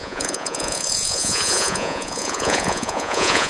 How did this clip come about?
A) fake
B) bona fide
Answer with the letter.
A